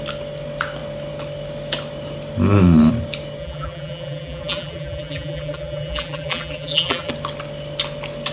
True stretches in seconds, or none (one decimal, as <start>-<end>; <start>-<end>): 0.0-3.4; 7.1-8.3